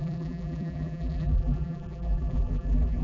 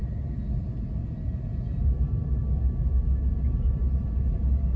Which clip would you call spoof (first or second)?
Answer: first